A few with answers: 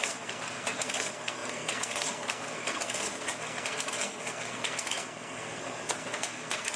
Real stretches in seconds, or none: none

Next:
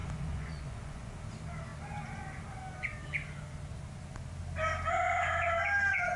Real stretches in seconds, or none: 1.1-6.2

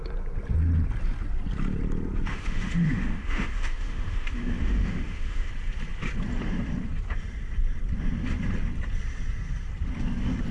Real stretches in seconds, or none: 0.0-2.3; 5.5-10.5

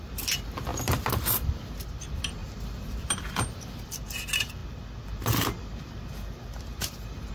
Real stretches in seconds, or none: 0.0-0.7; 1.2-2.4; 3.4-7.3

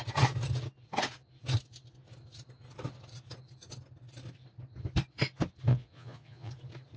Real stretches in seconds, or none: 0.0-5.7; 6.5-7.0

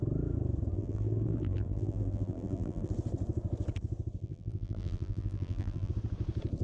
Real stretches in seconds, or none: 0.0-0.7; 2.9-4.2; 5.9-6.6